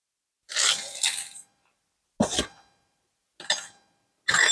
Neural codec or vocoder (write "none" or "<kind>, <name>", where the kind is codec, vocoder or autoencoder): none